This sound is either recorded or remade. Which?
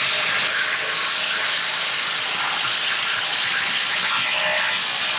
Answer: recorded